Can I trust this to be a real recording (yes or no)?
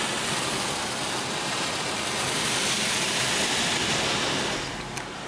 yes